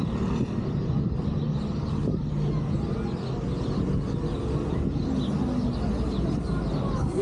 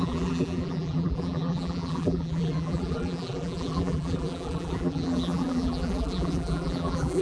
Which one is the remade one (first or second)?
second